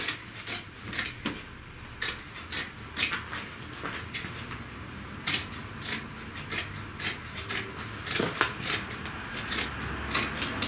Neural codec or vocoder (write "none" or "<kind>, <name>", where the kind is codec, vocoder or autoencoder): none